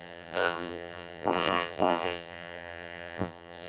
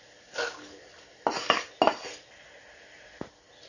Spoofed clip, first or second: first